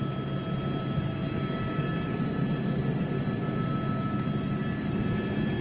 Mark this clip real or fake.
real